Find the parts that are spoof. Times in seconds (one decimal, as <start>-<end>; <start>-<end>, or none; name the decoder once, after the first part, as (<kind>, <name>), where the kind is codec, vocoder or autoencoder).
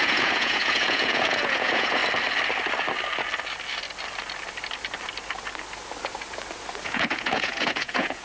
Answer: 0.0-2.0 (vocoder, Vocos); 6.8-8.2